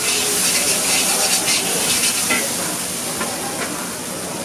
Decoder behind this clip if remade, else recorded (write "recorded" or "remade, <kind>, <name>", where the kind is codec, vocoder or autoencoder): recorded